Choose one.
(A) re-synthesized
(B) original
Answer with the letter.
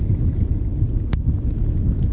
B